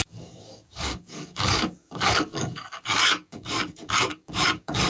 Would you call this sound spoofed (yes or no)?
yes